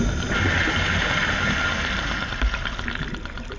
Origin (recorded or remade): recorded